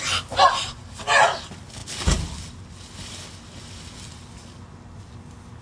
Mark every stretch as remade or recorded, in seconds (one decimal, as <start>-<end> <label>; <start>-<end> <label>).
0.0-5.6 recorded